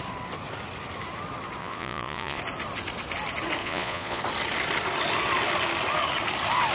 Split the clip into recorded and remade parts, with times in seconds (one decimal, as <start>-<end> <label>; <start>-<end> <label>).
0.0-1.6 recorded; 1.6-2.4 remade; 2.4-3.6 recorded; 3.6-4.2 remade; 4.2-6.7 recorded